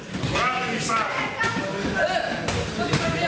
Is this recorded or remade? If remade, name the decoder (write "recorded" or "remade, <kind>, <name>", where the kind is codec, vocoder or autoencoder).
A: recorded